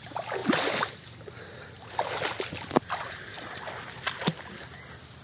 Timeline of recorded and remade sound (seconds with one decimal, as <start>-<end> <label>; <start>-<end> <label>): 0.0-5.2 recorded